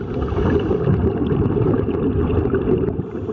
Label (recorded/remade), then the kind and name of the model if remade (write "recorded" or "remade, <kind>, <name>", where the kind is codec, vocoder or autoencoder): recorded